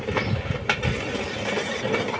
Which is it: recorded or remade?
recorded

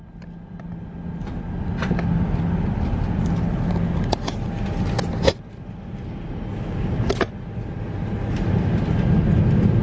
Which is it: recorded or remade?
recorded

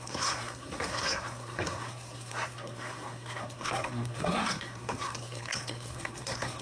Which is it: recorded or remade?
remade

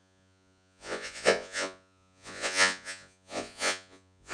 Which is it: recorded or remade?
remade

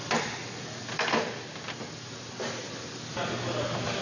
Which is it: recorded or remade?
recorded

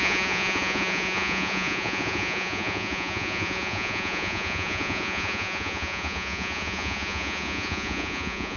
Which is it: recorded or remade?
remade